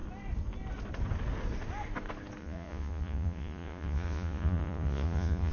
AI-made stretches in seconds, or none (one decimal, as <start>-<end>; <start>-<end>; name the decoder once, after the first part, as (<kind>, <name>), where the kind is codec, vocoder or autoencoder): 2.4-5.5 (vocoder, Vocos)